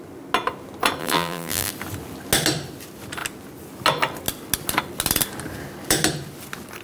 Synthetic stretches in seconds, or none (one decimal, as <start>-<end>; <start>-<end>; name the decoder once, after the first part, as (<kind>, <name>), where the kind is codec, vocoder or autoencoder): 1.0-1.7 (vocoder, BigVGAN v2)